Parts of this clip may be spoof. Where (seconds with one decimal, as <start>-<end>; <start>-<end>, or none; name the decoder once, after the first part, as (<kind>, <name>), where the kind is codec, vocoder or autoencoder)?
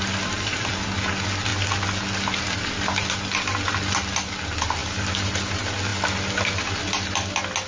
none